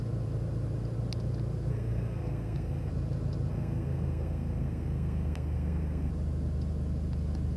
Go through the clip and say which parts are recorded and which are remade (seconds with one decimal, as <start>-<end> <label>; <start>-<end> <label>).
0.0-1.7 recorded; 1.7-2.9 remade; 2.9-3.5 recorded; 3.5-6.1 remade; 6.1-7.6 recorded